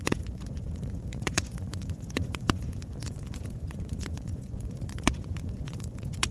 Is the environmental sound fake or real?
fake